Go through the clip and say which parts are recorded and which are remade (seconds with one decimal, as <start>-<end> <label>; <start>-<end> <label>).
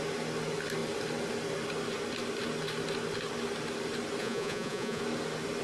0.0-4.2 recorded; 4.2-5.0 remade; 5.0-5.6 recorded